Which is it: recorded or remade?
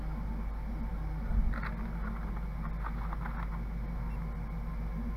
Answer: recorded